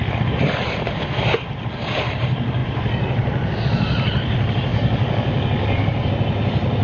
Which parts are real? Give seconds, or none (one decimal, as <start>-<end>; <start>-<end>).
0.0-4.7; 6.1-6.8

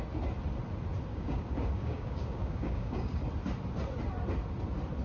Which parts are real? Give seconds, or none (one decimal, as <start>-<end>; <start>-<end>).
0.0-1.1; 3.2-5.0

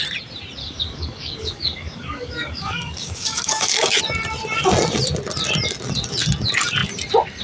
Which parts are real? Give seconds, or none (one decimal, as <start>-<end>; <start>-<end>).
0.0-0.6; 4.0-7.4

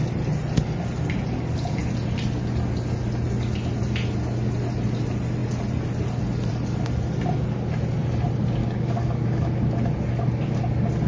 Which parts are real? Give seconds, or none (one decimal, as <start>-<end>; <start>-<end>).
0.0-8.6; 9.5-11.1

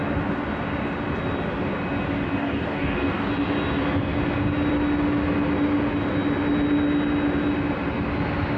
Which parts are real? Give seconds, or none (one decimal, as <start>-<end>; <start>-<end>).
0.0-2.4; 3.3-8.6

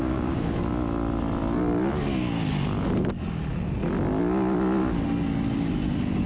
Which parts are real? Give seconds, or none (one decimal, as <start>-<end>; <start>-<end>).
0.7-6.3

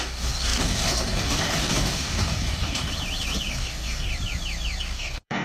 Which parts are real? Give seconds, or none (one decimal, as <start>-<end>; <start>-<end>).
2.9-3.5; 4.1-4.8